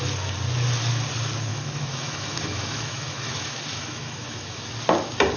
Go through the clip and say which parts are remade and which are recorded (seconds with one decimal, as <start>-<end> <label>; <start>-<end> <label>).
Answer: 0.0-1.5 recorded; 1.5-4.7 remade; 4.7-5.4 recorded